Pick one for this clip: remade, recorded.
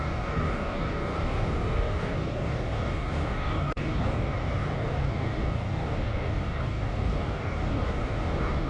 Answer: remade